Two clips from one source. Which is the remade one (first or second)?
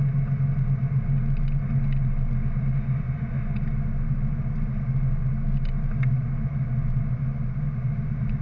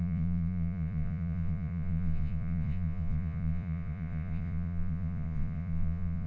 second